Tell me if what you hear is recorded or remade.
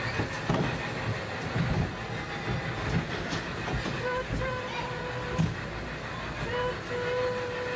recorded